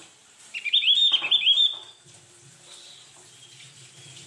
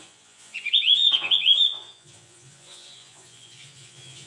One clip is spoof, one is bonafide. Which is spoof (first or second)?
second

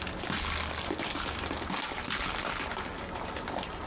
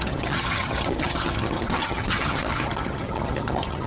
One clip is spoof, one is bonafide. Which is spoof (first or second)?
second